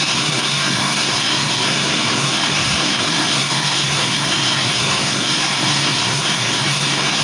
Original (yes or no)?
no